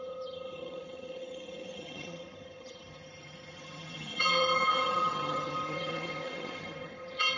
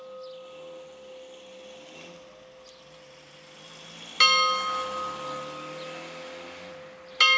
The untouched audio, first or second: second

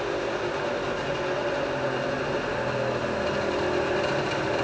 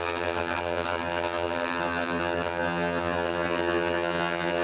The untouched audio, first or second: first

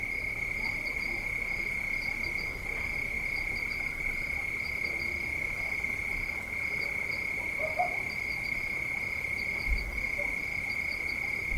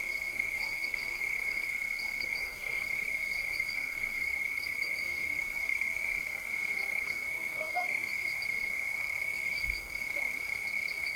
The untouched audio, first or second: first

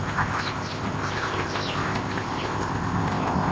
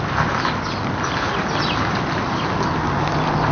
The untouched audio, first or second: second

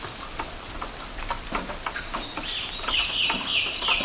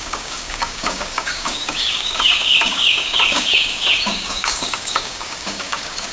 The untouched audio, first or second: first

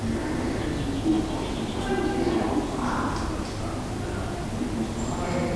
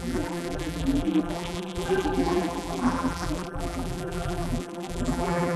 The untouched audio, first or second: first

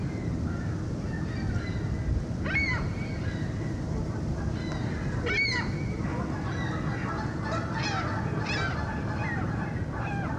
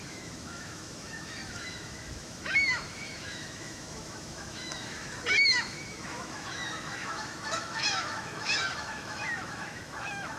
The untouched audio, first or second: first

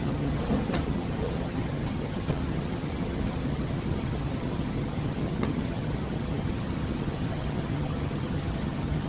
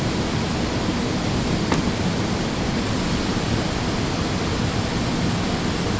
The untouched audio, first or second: second